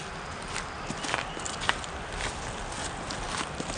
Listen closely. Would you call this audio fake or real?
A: real